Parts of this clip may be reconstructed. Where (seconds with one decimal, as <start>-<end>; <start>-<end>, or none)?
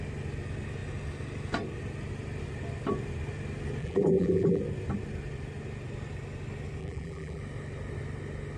3.8-4.6; 6.8-7.4